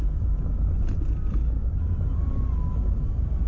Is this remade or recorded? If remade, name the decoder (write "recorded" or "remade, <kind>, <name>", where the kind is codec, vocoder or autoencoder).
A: recorded